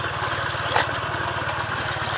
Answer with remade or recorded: recorded